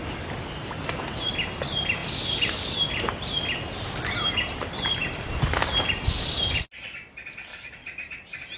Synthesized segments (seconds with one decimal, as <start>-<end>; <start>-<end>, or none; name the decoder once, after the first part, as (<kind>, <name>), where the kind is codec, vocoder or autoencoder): 5.0-5.5 (vocoder, BigVGAN v2); 7.5-8.1